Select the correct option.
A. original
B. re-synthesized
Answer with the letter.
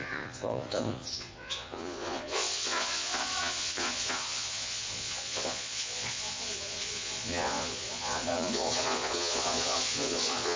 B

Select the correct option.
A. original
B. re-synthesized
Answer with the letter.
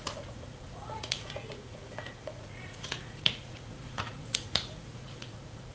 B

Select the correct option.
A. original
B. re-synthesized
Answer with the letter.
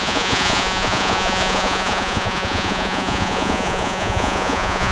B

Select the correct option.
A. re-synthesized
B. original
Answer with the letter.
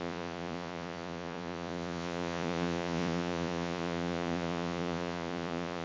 A